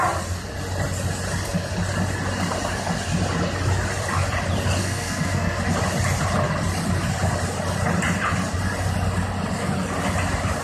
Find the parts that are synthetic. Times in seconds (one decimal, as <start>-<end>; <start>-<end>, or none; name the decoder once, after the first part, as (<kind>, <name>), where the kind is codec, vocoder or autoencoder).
4.8-5.6 (codec, SNAC)